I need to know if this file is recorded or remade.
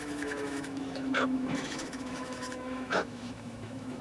remade